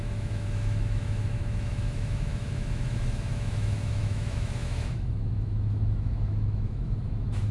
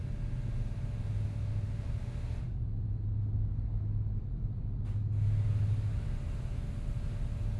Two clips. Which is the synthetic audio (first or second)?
first